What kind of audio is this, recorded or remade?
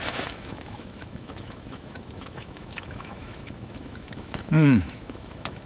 remade